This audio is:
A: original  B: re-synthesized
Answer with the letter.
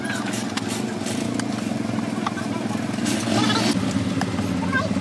A